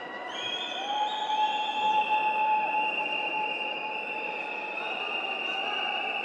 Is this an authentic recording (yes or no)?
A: no